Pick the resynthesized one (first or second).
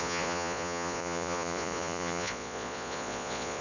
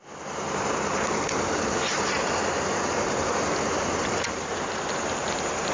first